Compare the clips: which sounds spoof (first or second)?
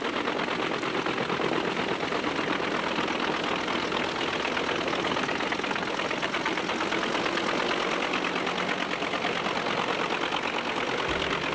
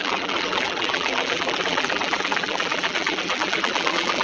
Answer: second